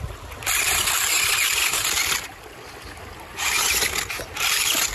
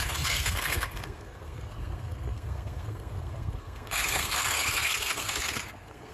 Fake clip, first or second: second